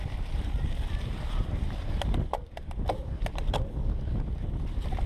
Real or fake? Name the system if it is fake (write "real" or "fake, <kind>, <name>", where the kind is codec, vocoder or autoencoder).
fake, vocoder, BigVGAN v2